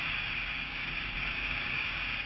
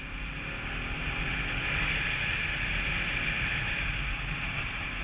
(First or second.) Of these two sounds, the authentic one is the second